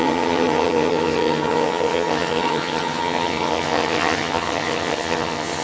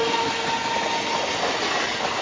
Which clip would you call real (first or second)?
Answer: second